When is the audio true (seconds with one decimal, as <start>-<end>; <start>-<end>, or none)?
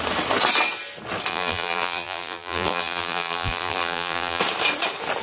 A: 0.0-1.3; 4.4-5.2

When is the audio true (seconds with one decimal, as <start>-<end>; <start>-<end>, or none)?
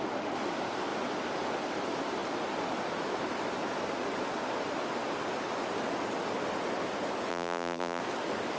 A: 0.0-7.3; 8.0-8.6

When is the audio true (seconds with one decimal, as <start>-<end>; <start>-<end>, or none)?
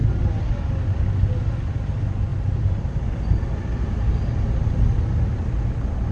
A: 0.0-6.1